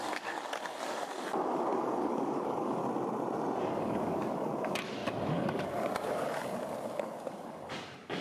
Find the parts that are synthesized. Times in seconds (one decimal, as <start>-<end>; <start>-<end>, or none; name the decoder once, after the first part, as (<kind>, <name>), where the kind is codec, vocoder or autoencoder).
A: 0.0-2.8 (codec, DAC); 3.6-8.2